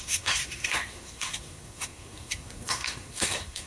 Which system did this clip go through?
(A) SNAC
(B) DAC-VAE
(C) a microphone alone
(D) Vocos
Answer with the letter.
A